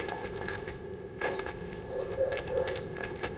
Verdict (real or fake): fake